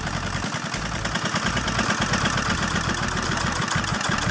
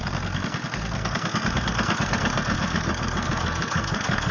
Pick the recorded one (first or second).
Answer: first